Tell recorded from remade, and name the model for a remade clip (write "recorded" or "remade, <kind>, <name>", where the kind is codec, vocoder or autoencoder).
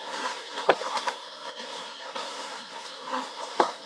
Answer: remade, codec, SNAC